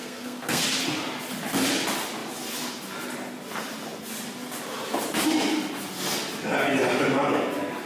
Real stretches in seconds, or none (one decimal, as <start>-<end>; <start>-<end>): 0.6-7.9